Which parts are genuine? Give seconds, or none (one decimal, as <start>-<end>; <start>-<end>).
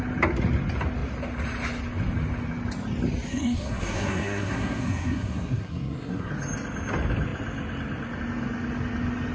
0.0-3.3; 6.3-9.3